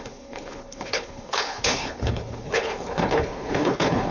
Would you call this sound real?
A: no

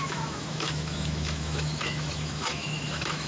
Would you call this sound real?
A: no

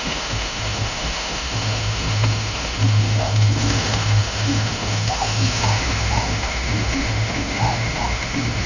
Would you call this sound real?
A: no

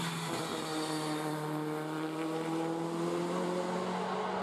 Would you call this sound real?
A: yes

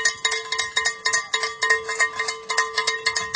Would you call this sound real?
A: yes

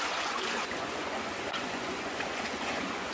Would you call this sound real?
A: no